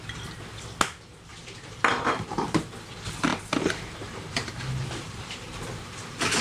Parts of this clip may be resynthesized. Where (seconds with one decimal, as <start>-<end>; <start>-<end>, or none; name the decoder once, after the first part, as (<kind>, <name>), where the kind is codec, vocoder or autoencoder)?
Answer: 1.3-2.7 (vocoder, BigVGAN v2); 3.3-5.6